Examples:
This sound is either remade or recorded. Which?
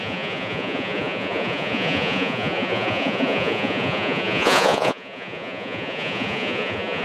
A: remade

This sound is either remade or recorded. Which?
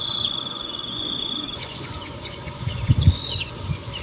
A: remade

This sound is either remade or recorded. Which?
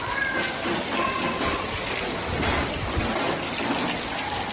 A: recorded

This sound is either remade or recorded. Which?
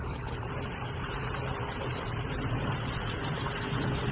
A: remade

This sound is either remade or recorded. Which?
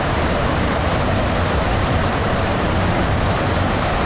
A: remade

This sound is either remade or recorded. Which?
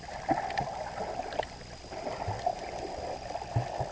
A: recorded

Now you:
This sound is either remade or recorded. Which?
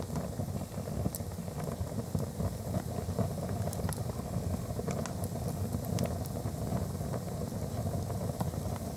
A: recorded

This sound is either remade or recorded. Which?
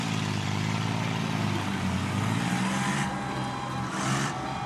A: recorded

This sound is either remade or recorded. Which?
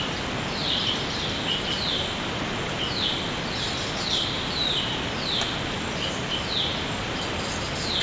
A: recorded